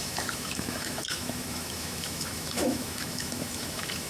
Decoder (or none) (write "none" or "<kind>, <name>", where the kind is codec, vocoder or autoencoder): autoencoder, DAC-VAE